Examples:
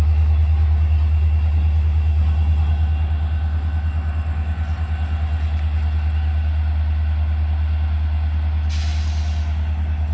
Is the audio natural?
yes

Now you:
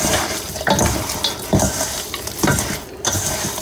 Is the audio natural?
yes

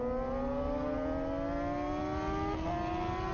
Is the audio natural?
yes